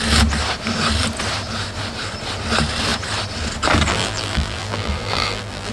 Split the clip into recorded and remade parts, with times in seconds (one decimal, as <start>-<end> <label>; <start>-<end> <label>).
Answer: 0.0-3.9 recorded; 3.9-5.7 remade